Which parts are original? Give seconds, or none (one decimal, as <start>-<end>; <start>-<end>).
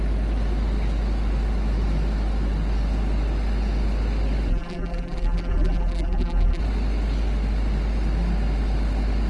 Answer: 0.0-4.5; 6.6-9.3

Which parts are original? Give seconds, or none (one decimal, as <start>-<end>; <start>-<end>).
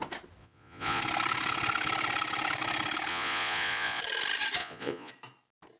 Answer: 0.0-0.4; 1.0-3.1; 4.0-4.6; 5.1-5.8